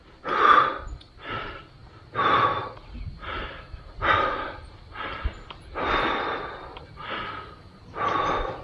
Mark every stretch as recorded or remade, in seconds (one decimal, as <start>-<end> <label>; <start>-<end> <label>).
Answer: 0.0-8.6 recorded